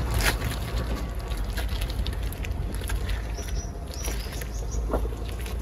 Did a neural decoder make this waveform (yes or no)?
no